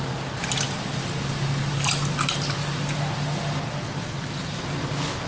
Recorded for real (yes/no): yes